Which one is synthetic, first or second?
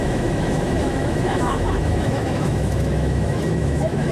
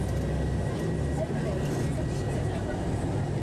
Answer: first